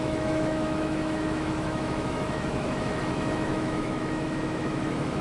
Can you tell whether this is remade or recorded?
remade